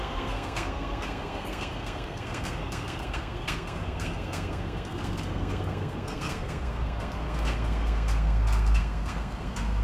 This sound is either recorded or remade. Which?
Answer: remade